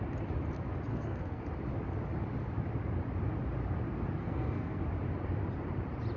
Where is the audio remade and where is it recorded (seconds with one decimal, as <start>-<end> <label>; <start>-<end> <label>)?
0.0-0.9 recorded; 0.9-1.4 remade; 1.4-4.2 recorded; 4.2-4.8 remade; 4.8-6.2 recorded